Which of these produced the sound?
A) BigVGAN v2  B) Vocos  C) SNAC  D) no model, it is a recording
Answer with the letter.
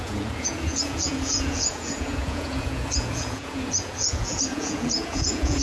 B